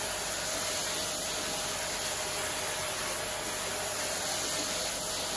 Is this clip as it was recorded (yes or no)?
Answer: yes